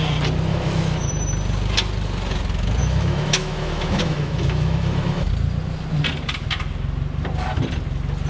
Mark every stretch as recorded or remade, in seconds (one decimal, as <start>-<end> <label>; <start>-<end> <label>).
0.0-0.5 recorded; 0.5-1.1 remade; 1.1-2.8 recorded; 2.8-5.3 remade; 5.3-8.3 recorded